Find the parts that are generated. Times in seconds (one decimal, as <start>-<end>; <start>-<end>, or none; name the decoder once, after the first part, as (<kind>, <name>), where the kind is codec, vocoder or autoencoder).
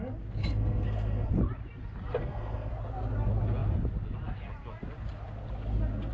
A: 0.4-1.3 (codec, SNAC); 2.2-2.7